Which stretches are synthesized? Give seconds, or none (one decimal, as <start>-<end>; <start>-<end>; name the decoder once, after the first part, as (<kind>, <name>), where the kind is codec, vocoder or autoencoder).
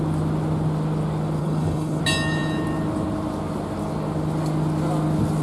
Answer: 1.4-2.0 (codec, HILCodec)